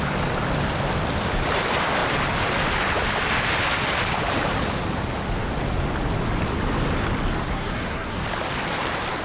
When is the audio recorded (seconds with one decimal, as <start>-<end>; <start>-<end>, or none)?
0.0-7.5; 8.2-9.2

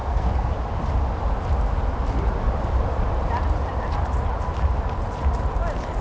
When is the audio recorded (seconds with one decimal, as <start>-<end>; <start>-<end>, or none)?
0.5-6.0

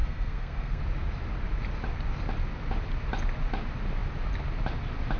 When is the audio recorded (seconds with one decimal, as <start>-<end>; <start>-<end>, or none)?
0.8-5.2

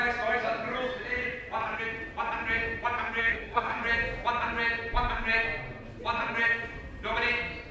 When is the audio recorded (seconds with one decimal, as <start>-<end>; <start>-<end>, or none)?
0.0-3.2; 3.8-7.7

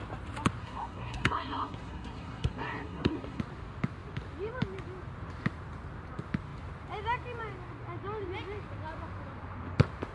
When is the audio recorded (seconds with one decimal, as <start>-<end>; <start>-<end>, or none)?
0.0-0.6; 3.4-10.1